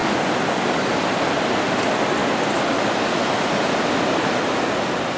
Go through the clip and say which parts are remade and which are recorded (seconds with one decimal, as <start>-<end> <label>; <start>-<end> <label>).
0.0-5.2 recorded